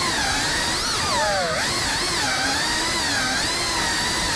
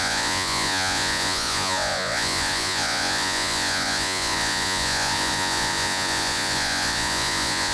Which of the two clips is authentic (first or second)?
first